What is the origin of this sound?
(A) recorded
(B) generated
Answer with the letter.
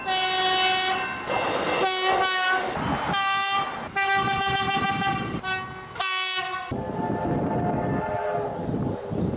A